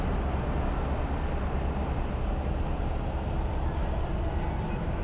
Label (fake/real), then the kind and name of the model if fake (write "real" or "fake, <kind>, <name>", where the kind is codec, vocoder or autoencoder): real